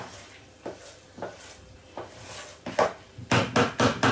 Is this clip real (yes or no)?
yes